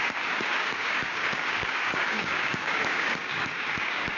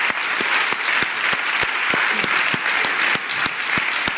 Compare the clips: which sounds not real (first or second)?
first